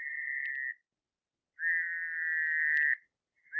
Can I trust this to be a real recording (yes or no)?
yes